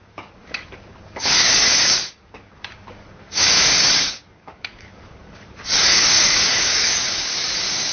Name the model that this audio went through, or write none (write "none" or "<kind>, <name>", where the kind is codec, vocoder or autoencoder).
codec, DAC